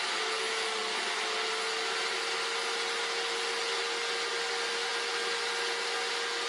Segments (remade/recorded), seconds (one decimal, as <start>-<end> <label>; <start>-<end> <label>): 0.0-6.5 recorded